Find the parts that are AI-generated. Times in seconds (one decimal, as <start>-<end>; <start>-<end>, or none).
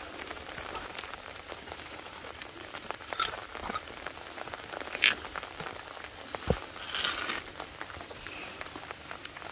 0.0-3.4; 8.1-9.5